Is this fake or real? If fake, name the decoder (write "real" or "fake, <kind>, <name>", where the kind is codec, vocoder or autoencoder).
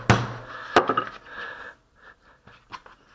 real